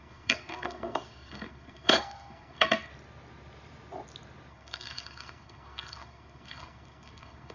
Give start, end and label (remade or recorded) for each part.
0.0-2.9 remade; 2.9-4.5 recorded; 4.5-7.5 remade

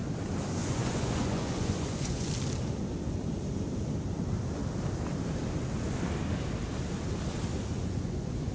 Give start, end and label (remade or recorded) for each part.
0.0-0.6 recorded; 0.6-2.3 remade; 2.3-7.7 recorded; 7.7-8.5 remade

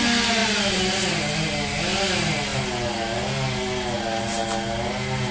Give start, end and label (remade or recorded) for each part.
0.0-5.3 recorded